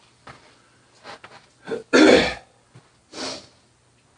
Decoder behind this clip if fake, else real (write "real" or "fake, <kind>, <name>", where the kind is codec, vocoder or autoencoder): real